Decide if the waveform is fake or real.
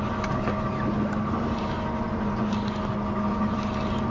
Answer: real